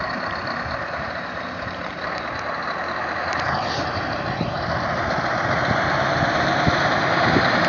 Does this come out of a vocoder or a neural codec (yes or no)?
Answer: yes